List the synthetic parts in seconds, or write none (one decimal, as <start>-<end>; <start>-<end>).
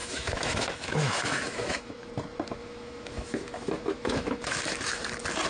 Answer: 0.0-2.1; 2.6-5.0